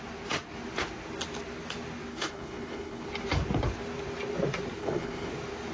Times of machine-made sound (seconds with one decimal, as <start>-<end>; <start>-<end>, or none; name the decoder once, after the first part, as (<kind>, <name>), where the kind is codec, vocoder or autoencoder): 2.1-3.1 (codec, HILCodec); 4.8-5.3